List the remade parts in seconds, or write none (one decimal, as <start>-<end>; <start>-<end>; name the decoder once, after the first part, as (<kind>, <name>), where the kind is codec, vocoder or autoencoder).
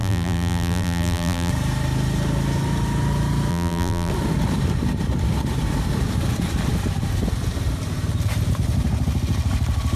0.0-1.5 (vocoder, BigVGAN v2); 3.5-4.1